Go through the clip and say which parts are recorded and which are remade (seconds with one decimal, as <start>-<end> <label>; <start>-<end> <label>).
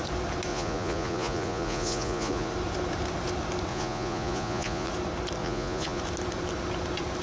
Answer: 0.0-0.5 recorded; 0.5-2.5 remade; 2.5-3.7 recorded; 3.7-4.9 remade; 4.9-5.4 recorded; 5.4-6.0 remade; 6.0-7.2 recorded